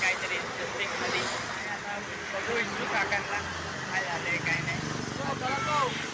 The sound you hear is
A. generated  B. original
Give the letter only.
B